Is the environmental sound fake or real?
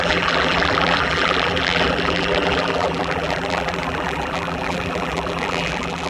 fake